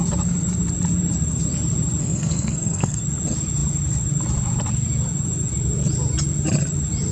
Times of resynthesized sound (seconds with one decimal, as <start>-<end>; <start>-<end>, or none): 2.0-3.0